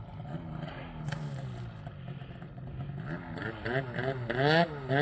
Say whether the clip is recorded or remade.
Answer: recorded